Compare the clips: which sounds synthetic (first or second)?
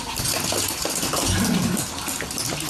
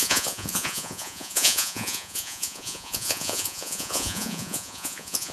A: second